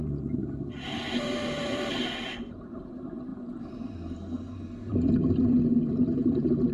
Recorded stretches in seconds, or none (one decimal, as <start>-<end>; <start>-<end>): 0.0-6.7